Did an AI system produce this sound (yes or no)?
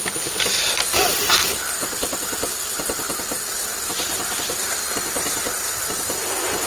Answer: yes